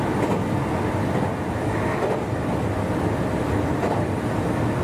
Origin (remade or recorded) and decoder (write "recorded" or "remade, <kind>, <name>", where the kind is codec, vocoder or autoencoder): recorded